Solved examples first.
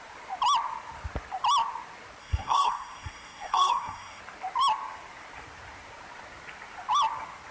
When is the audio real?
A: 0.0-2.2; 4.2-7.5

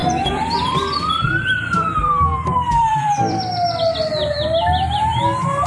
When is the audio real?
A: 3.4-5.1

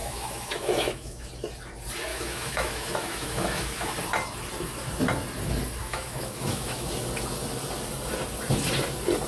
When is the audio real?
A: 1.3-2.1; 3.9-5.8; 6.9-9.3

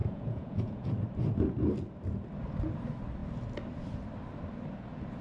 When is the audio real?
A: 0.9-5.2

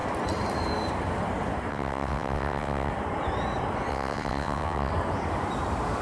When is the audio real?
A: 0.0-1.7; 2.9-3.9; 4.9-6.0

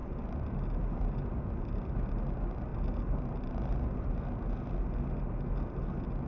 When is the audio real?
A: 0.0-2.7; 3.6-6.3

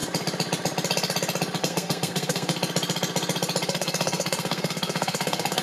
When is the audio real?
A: 0.0-1.6; 2.5-3.7